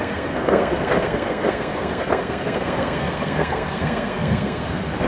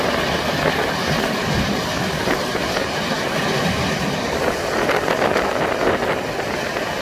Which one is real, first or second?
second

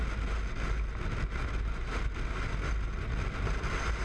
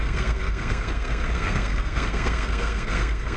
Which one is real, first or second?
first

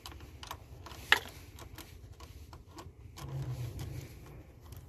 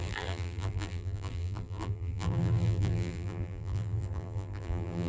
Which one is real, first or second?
first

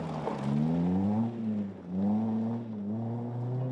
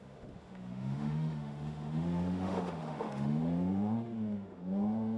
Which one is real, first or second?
first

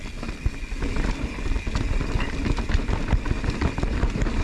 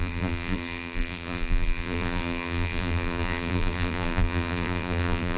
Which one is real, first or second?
first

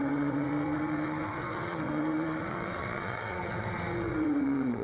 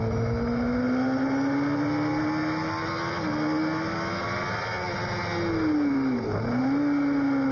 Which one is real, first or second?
second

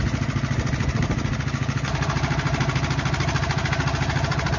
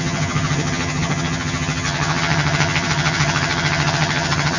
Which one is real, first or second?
first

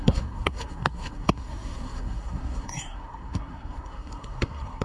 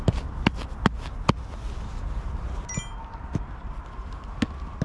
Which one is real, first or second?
second